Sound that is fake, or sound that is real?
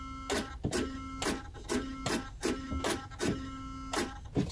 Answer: real